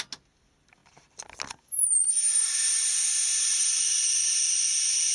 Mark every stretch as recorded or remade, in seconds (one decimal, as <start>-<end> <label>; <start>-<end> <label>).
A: 0.0-5.1 recorded